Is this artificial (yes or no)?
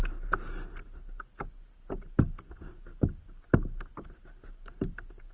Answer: no